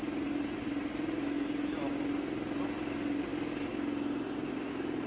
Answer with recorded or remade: recorded